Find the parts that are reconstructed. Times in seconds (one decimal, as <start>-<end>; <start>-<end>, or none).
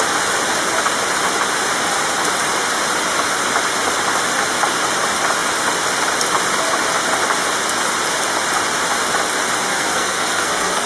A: 9.7-10.9